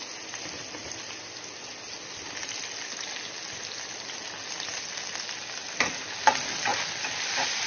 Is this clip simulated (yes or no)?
no